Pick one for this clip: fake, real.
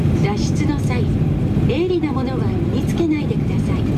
real